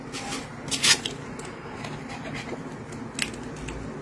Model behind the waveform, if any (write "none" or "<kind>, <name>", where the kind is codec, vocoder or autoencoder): none